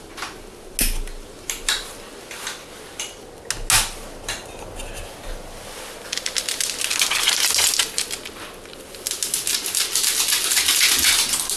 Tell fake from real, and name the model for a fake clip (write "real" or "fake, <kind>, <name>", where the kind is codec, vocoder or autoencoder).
real